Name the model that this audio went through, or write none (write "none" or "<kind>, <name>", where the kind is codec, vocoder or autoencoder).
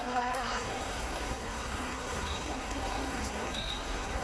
codec, SNAC